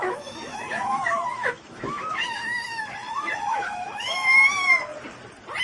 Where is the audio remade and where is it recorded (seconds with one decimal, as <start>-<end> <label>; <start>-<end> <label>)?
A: 0.0-4.9 remade; 4.9-5.6 recorded